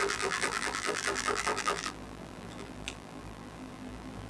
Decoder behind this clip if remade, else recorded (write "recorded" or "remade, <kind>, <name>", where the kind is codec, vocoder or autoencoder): remade, vocoder, BigVGAN v2